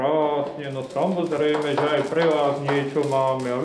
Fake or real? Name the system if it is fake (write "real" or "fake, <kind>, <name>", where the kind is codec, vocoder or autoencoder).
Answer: real